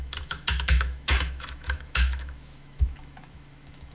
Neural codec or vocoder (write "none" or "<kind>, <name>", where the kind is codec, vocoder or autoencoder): autoencoder, DAC-VAE